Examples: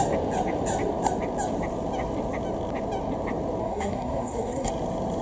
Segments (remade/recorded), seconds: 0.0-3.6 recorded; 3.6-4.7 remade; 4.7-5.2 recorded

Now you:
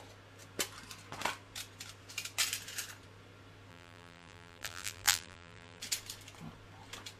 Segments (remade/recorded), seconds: 0.0-3.7 recorded; 3.7-5.8 remade; 5.8-7.2 recorded

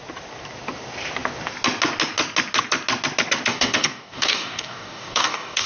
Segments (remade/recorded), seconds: 0.0-3.5 recorded; 3.5-5.7 remade

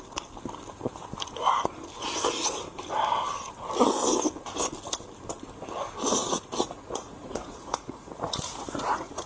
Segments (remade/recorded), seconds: 0.0-6.2 recorded; 6.2-9.3 remade

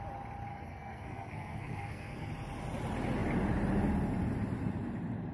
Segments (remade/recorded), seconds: 0.0-0.5 recorded; 0.5-2.3 remade; 2.3-5.3 recorded

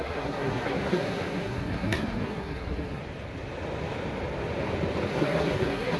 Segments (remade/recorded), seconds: 0.0-3.0 remade; 3.0-5.1 recorded; 5.1-6.0 remade